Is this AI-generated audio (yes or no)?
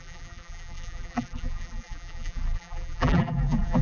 yes